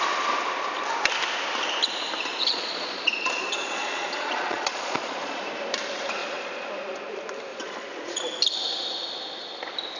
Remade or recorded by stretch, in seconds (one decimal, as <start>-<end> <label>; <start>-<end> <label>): 0.0-2.3 recorded; 2.3-5.4 remade; 5.4-6.2 recorded; 6.2-6.7 remade; 6.7-7.5 recorded; 7.5-8.2 remade; 8.2-10.0 recorded